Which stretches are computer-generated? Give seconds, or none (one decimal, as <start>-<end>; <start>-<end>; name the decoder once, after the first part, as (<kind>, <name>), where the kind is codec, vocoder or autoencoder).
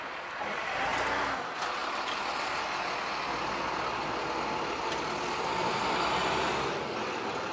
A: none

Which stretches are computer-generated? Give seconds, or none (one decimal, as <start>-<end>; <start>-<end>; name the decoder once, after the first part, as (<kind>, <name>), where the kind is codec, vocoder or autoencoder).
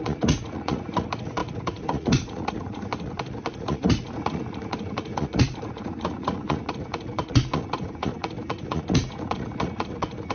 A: 0.0-10.3 (vocoder, Vocos)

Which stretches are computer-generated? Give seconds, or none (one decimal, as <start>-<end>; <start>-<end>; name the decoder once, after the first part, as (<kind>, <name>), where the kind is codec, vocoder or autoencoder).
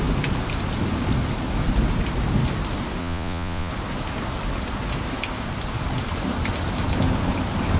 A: 3.0-3.7 (vocoder, Vocos)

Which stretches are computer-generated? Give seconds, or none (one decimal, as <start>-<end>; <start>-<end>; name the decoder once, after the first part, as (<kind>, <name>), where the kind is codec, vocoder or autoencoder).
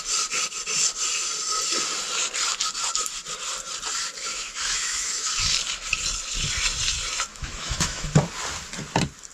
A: 4.3-5.3 (autoencoder, DAC-VAE); 7.3-8.1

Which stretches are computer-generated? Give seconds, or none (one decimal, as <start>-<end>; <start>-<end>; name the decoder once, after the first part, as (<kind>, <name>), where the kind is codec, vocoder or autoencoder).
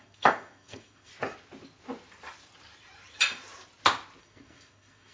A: 0.0-1.1 (codec, SNAC); 4.2-5.1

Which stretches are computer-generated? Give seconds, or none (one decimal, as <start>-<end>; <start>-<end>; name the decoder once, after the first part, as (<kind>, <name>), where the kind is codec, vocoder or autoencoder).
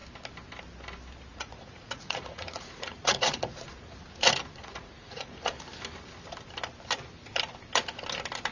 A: 1.3-4.0 (vocoder, Vocos); 4.6-5.5